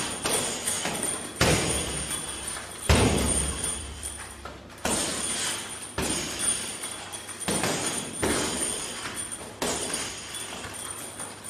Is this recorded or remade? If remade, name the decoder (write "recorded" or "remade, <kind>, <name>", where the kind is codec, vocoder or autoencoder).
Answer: remade, vocoder, BigVGAN v2